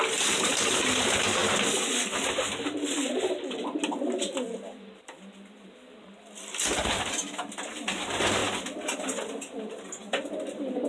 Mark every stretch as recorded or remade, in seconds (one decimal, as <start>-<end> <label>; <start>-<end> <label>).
0.0-10.9 recorded